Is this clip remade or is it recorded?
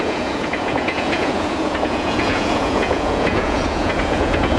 remade